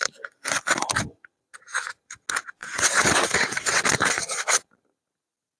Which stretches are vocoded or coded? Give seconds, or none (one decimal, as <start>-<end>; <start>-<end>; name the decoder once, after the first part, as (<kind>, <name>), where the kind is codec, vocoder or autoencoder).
2.6-3.8 (vocoder, WaveNeXt)